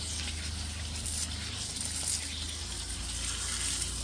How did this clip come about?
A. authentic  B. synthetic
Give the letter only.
A